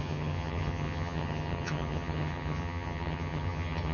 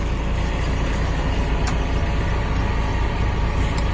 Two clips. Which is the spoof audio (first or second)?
first